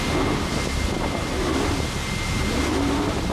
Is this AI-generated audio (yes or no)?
no